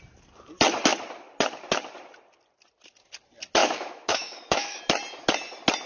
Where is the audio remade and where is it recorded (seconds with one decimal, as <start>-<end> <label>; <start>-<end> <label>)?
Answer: 0.0-3.6 recorded; 3.6-4.8 remade; 4.8-5.9 recorded